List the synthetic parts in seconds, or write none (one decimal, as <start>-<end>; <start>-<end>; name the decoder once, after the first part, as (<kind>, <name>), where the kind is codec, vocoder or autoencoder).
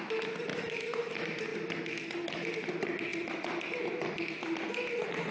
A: 0.5-1.1 (autoencoder, DAC-VAE)